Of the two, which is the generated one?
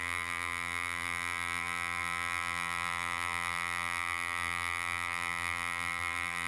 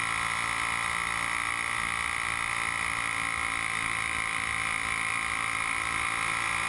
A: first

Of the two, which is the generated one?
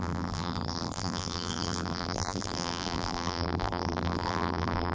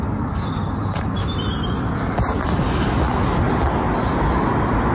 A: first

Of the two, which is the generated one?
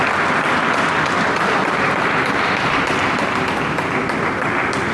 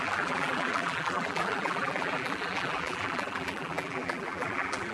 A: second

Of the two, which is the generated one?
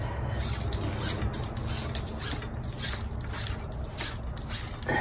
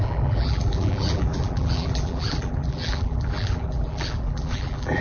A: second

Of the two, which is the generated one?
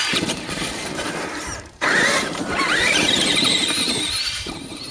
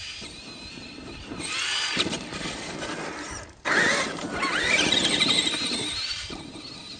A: first